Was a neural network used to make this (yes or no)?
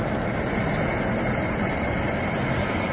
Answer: no